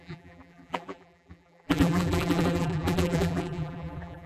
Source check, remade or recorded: remade